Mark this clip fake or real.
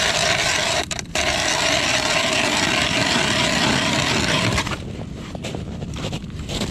fake